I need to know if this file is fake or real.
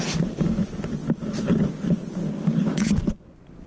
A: real